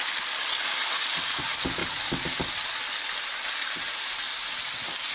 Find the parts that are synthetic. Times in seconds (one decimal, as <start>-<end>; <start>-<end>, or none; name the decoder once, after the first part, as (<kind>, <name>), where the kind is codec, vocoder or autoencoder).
1.8-3.7 (vocoder, BigVGAN v2)